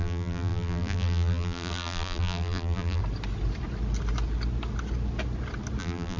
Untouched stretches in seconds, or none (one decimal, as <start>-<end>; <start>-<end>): 3.0-5.8

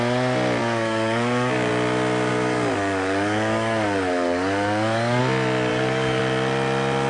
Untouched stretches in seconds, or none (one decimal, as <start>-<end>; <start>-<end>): 0.0-0.6; 1.7-2.3; 5.2-5.7; 6.2-7.1

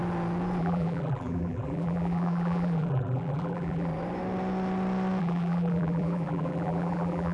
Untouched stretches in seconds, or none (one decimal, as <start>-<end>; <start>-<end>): 0.0-0.6; 3.9-5.2

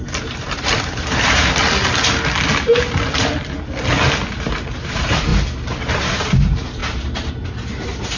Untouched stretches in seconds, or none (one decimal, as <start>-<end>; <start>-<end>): 1.6-4.3; 5.3-5.9

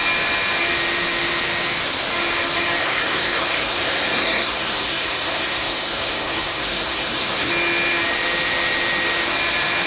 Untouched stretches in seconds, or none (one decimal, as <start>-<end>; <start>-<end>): 0.0-2.8; 7.5-9.9